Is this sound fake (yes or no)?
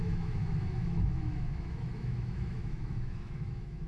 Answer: yes